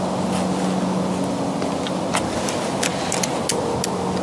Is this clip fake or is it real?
real